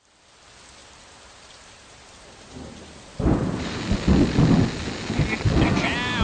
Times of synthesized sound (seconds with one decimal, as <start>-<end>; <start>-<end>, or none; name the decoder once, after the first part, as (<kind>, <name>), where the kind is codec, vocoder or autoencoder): 0.8-3.8 (vocoder, BigVGAN v2)